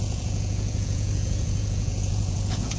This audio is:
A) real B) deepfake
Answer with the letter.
B